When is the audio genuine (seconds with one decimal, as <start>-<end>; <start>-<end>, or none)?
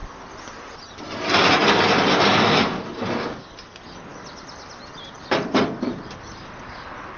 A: 0.0-7.2